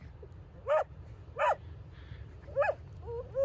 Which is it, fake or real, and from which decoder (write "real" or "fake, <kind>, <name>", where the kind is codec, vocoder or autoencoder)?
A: real